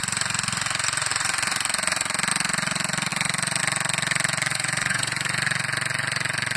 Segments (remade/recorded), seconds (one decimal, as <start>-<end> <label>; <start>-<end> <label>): 0.0-4.5 recorded; 4.5-5.4 remade; 5.4-6.6 recorded